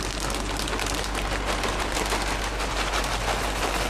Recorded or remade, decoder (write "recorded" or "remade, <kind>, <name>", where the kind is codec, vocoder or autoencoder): recorded